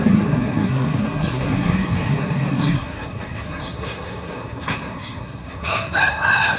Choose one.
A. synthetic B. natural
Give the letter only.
A